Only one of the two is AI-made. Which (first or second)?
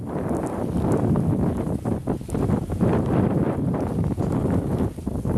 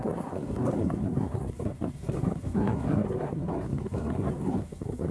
second